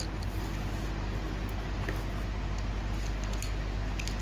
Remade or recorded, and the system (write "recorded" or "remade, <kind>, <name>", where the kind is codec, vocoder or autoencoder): recorded